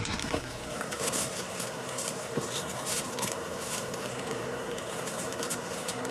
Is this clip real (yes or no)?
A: no